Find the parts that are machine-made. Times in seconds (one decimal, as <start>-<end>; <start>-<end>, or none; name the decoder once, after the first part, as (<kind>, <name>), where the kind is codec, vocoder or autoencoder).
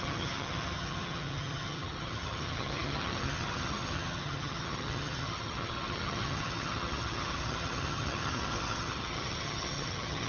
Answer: 0.0-10.3 (vocoder, HiFi-GAN)